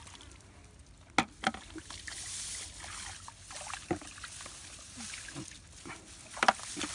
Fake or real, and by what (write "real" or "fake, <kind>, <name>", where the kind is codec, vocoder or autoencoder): real